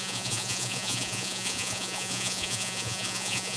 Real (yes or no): no